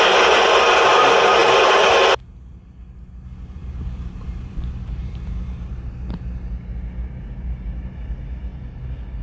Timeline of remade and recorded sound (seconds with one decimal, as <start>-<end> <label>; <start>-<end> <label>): 0.0-3.6 recorded; 3.6-5.9 remade; 5.9-9.2 recorded